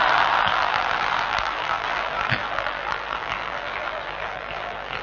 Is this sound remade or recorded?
remade